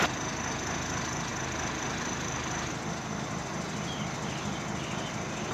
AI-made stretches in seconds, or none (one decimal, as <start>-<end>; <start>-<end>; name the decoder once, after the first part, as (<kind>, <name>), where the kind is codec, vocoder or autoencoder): none